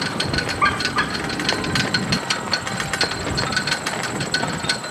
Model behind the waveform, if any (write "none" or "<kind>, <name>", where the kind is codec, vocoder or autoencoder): none